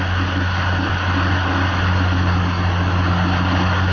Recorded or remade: recorded